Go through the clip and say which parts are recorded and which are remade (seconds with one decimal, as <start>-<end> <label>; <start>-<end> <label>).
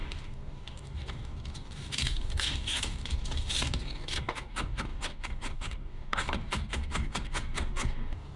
0.0-8.4 remade